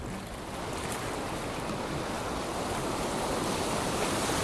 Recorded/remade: recorded